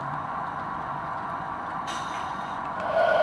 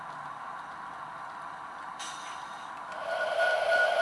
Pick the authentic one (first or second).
second